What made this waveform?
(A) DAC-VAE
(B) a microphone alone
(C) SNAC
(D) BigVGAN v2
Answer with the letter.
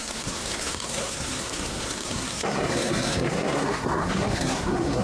C